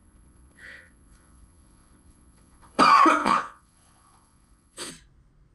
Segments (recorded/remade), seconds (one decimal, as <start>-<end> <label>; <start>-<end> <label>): 0.0-2.8 remade; 2.8-3.2 recorded; 3.2-4.9 remade; 4.9-5.5 recorded